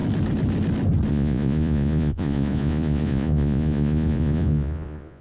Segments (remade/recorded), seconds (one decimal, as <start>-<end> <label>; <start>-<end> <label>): 0.0-1.1 recorded; 1.1-5.2 remade